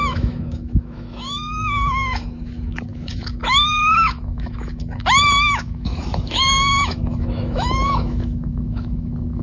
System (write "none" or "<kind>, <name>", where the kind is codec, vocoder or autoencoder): autoencoder, DAC-VAE